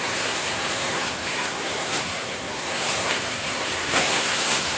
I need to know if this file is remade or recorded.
remade